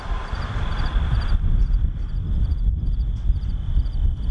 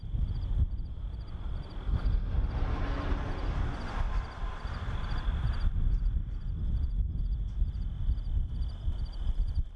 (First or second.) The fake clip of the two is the first